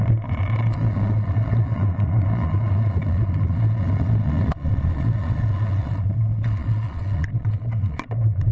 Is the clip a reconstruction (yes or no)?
yes